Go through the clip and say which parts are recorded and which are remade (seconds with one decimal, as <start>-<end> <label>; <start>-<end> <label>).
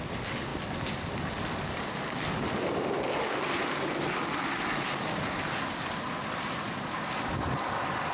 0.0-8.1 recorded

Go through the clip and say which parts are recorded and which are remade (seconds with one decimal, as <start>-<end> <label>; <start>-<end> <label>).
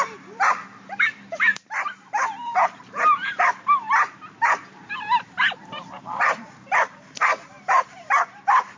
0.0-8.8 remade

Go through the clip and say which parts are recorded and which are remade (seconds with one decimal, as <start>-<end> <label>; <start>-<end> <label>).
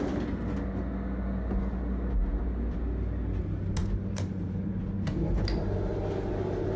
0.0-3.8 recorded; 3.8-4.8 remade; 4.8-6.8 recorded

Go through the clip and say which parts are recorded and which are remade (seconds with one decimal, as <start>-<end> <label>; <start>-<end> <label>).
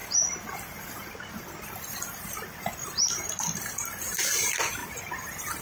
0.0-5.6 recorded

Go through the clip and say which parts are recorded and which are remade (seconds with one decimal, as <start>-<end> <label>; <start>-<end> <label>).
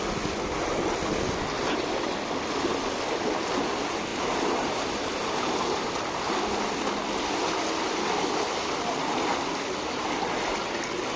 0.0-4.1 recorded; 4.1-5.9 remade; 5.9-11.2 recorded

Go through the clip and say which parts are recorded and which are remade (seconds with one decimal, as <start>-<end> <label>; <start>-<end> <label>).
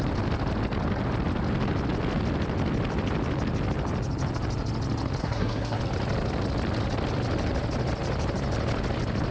0.0-5.2 recorded; 5.2-5.8 remade; 5.8-9.3 recorded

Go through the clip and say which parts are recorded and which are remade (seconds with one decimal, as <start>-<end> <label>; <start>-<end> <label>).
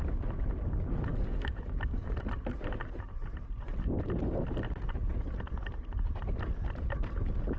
0.0-1.1 recorded; 1.1-2.1 remade; 2.1-7.6 recorded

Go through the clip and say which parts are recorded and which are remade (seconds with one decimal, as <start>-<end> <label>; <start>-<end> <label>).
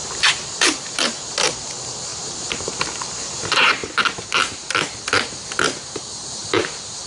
0.0-7.1 remade